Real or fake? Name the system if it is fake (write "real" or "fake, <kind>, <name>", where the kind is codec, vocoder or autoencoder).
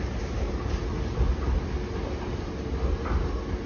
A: real